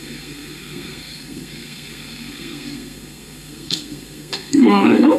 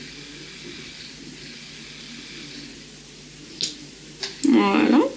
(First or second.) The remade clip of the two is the first